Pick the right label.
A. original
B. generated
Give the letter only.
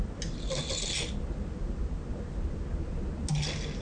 A